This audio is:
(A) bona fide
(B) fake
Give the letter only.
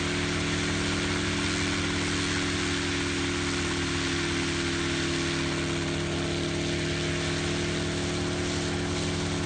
A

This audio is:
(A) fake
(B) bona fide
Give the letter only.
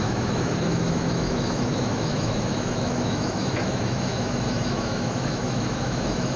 A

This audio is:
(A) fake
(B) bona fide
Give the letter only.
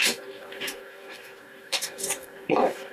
A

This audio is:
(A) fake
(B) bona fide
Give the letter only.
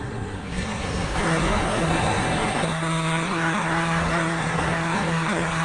A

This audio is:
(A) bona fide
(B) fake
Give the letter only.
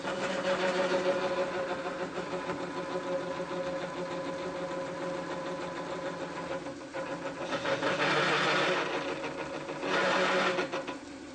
A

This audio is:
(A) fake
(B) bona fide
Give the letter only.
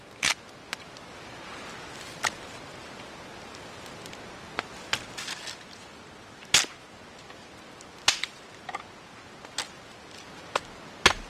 B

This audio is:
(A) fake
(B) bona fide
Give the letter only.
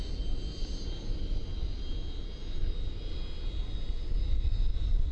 B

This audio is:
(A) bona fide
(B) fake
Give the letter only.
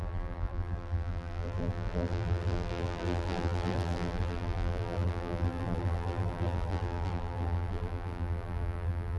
B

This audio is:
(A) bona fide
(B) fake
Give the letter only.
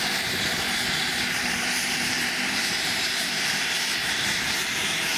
B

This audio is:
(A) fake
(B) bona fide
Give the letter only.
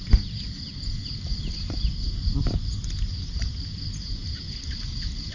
B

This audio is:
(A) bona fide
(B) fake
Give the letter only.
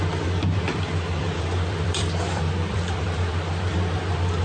B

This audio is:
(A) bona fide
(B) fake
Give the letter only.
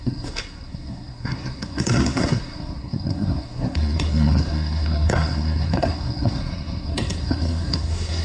B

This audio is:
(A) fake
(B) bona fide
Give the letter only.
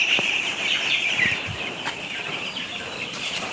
A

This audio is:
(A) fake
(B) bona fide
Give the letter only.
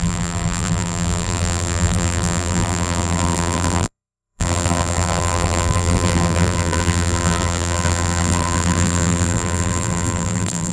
A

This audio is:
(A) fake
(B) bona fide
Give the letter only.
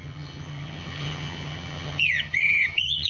A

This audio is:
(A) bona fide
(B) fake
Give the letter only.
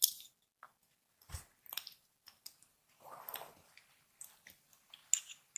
A